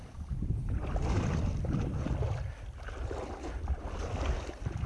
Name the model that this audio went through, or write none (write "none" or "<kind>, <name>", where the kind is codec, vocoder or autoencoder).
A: none